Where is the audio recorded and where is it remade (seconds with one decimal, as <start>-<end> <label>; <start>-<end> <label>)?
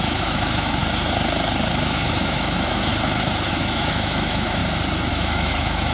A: 0.0-0.8 remade; 0.8-1.7 recorded; 1.7-2.9 remade; 2.9-3.5 recorded; 3.5-4.6 remade; 4.6-5.1 recorded; 5.1-5.9 remade